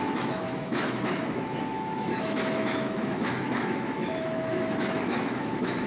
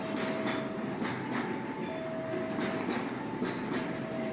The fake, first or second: first